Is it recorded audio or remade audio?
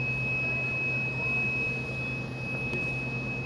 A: recorded